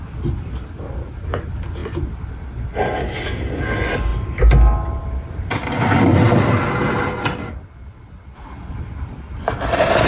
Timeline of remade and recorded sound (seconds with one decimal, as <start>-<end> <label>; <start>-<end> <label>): 0.0-10.1 recorded